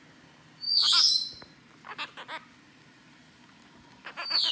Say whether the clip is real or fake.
real